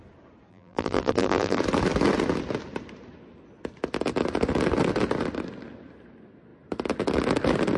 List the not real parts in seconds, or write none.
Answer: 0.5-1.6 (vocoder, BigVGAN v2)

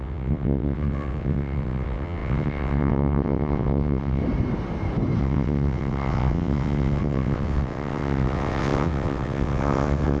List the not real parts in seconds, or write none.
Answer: 0.0-4.2 (vocoder, WaveNeXt); 5.2-10.2

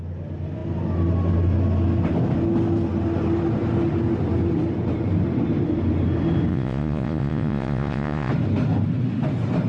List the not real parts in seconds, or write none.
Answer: 6.5-8.3 (vocoder, Vocos)

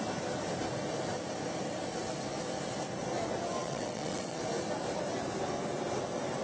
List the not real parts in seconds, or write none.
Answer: 3.6-4.4 (vocoder, WaveNeXt)

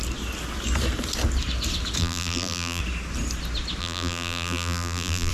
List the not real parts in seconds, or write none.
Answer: 2.0-2.8 (vocoder, BigVGAN v2); 3.8-5.3